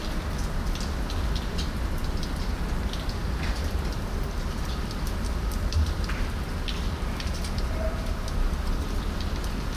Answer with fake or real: fake